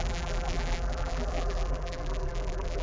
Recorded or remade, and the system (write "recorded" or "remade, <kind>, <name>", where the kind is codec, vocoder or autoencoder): remade, vocoder, BigVGAN v2